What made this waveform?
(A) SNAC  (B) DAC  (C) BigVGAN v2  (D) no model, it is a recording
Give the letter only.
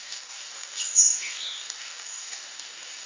B